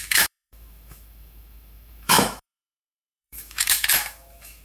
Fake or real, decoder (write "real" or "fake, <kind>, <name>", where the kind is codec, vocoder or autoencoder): fake, autoencoder, DAC-VAE